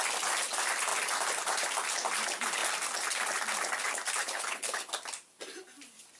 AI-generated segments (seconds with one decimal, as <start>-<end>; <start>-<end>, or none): 4.2-4.9